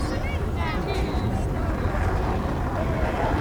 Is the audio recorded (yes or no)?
yes